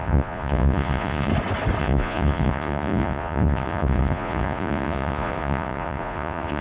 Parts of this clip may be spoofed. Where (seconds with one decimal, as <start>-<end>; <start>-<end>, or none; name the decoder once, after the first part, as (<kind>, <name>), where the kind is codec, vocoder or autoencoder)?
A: 0.0-1.3 (vocoder, Vocos); 1.8-6.6